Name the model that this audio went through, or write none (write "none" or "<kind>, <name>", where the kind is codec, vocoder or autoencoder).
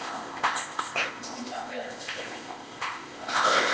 codec, ZipCodec